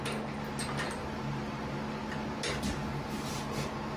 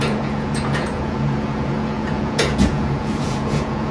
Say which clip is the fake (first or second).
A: second